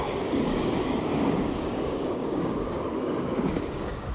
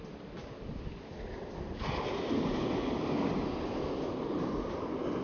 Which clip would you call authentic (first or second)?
second